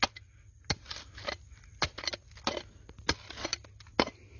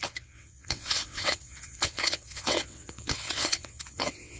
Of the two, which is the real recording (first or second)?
first